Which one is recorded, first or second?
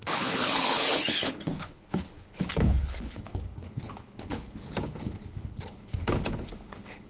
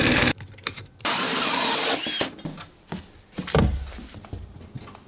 second